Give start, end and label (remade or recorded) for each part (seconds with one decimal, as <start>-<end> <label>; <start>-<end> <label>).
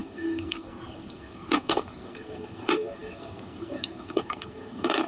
0.0-5.1 remade